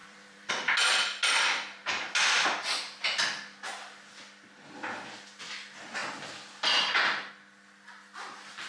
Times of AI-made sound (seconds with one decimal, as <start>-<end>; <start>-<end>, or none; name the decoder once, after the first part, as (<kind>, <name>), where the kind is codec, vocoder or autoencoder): 0.0-0.5 (vocoder, BigVGAN v2)